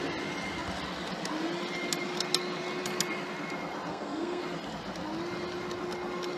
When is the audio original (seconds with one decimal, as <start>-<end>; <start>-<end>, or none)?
0.0-3.9; 4.4-6.4